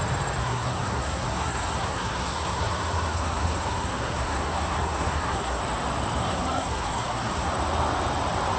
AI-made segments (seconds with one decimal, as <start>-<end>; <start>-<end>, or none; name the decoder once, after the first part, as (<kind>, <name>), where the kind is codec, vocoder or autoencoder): 0.4-5.6 (codec, SNAC); 6.2-7.5